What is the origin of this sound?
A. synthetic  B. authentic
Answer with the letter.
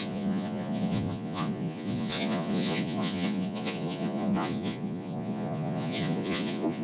A